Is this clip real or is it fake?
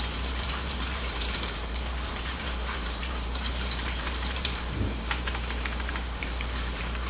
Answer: fake